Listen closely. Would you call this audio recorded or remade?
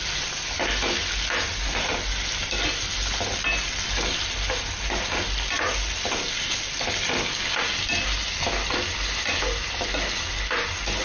recorded